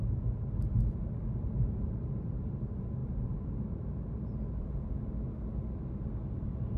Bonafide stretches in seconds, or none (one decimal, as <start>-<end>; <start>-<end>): 0.0-6.8